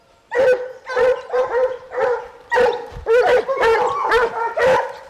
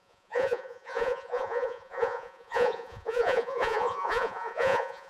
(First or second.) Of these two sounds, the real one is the first